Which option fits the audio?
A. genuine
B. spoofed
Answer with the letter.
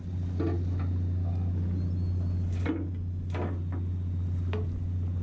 A